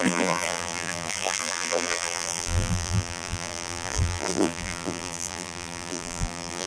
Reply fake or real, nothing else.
fake